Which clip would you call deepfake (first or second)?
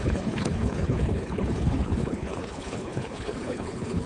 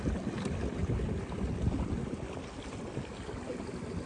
first